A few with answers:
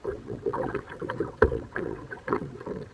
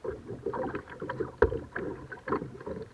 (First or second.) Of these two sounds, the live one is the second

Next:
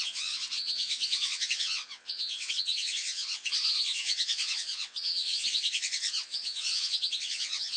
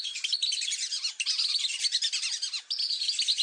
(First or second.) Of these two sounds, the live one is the second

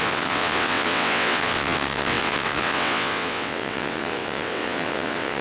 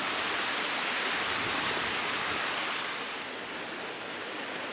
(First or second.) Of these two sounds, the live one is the second